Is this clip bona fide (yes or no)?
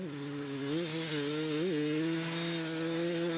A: yes